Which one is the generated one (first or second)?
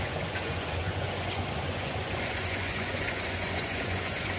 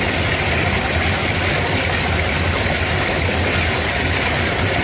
first